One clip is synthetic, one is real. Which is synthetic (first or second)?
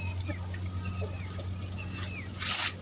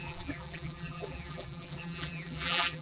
second